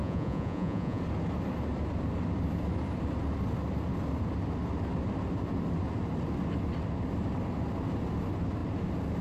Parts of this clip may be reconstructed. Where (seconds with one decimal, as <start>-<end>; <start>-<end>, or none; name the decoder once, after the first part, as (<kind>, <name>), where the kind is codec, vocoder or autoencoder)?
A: 0.0-1.0 (vocoder, Vocos)